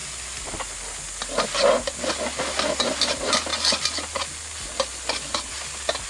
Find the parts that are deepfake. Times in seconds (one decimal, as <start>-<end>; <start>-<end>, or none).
none